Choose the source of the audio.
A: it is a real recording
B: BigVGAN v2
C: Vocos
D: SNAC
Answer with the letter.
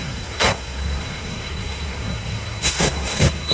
D